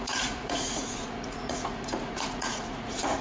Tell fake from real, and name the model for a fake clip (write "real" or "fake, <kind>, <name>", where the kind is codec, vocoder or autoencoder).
fake, vocoder, Vocos